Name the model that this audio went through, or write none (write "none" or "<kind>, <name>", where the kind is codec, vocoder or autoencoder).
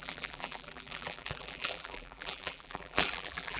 vocoder, BigVGAN v2